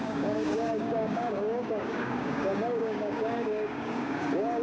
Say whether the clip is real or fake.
fake